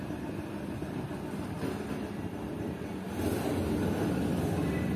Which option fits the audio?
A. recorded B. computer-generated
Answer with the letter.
A